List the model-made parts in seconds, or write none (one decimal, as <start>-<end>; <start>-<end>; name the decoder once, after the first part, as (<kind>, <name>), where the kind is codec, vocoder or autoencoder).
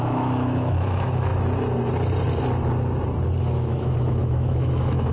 0.0-1.3 (autoencoder, DAC-VAE); 3.4-5.1